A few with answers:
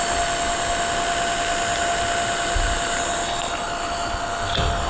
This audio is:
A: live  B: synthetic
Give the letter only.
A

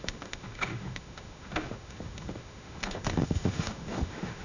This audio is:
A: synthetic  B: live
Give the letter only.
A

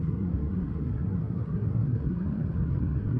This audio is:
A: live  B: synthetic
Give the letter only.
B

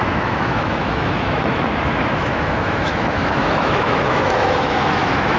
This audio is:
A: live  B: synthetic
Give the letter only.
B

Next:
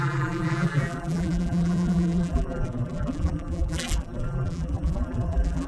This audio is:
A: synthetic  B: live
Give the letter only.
A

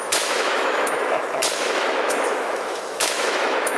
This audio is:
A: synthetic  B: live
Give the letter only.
A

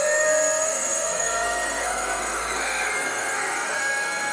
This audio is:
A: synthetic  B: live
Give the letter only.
A